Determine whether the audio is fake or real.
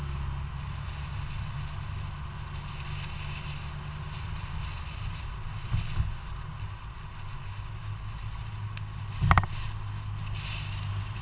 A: real